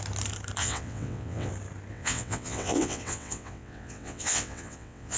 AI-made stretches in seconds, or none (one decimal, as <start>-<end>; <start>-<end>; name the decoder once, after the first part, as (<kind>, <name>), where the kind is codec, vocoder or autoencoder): 0.6-1.5 (vocoder, WaveNeXt); 1.9-5.2